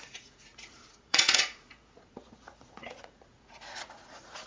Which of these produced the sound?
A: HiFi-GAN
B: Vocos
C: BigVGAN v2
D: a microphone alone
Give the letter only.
B